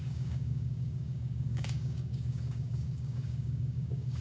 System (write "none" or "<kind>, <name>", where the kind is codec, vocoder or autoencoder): codec, DAC